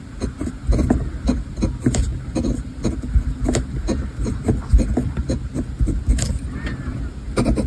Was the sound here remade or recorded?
recorded